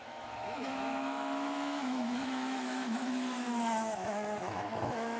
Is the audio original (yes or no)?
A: no